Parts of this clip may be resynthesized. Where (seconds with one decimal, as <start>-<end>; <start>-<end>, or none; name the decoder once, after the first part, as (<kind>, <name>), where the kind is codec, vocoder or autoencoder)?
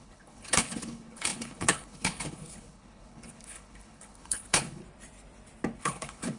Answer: 0.0-4.8 (codec, HILCodec); 5.8-6.4